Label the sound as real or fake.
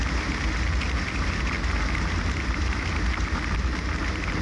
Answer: real